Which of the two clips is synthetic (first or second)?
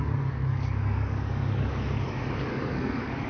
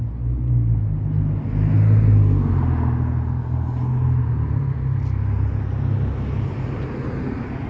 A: first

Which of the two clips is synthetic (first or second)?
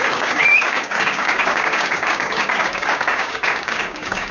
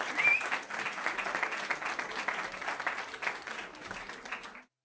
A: first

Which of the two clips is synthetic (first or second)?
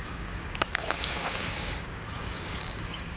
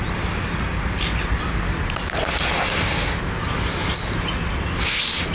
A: first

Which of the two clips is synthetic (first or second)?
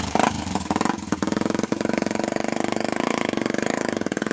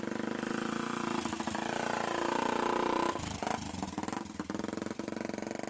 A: first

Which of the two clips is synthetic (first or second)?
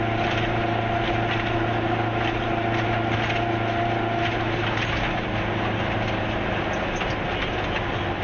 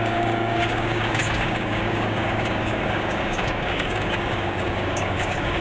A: second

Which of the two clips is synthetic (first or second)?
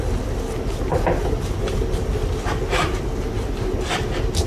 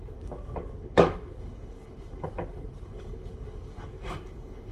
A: second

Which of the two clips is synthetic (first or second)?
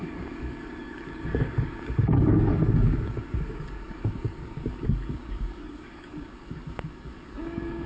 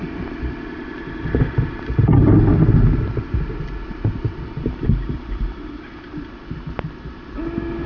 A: first